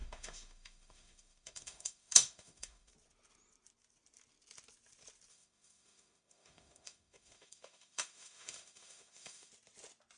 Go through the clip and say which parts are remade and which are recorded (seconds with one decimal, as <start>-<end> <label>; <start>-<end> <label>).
0.0-2.9 remade; 2.9-5.3 recorded; 5.3-9.5 remade; 9.5-10.2 recorded